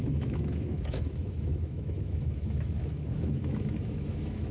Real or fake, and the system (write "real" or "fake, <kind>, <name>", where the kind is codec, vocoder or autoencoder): fake, autoencoder, DAC-VAE